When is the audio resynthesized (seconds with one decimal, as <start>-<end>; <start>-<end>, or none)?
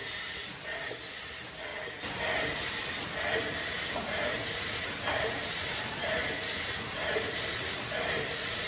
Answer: 1.2-1.7; 3.7-6.2; 6.8-8.7